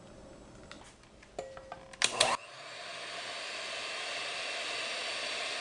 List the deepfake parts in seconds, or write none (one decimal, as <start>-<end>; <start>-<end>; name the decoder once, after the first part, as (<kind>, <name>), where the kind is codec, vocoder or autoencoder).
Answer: none